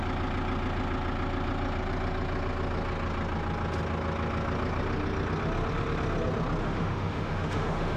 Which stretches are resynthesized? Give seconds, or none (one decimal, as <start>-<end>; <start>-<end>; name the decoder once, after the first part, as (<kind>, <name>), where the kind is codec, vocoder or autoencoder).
6.6-8.0 (autoencoder, DAC-VAE)